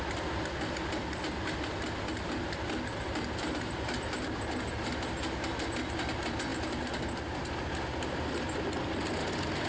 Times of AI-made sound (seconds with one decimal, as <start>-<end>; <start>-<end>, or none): none